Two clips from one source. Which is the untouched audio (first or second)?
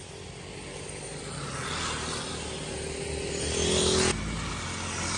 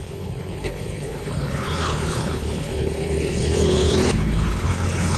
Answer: first